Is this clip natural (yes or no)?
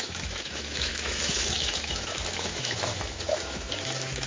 no